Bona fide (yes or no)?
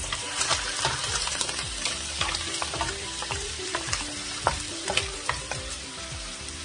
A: no